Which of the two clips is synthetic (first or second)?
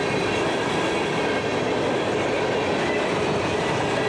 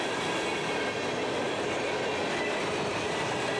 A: first